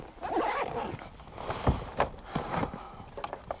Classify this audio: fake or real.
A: real